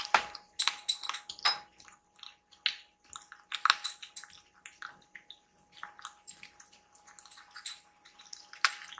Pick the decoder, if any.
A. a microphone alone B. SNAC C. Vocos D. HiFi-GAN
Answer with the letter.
A